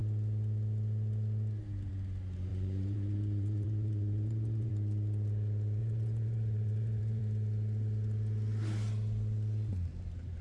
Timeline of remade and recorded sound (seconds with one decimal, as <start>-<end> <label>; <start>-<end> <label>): 0.0-2.5 recorded; 2.5-4.7 remade; 4.7-5.8 recorded; 5.8-7.2 remade; 7.2-10.4 recorded